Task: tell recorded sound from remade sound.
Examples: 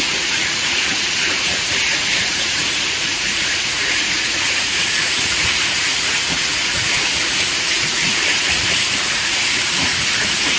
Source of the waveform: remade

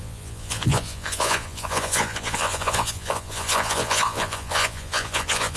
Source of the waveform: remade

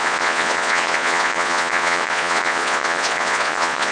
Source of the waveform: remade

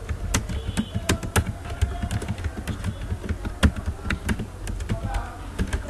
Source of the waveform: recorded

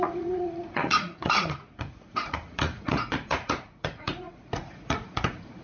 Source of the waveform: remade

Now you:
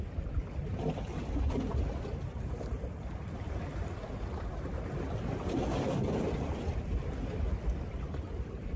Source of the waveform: recorded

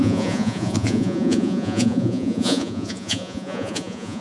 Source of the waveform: remade